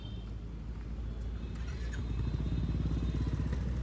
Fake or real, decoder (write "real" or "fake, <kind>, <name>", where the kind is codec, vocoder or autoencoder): real